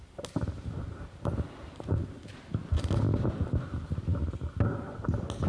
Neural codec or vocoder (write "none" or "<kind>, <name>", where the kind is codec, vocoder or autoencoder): none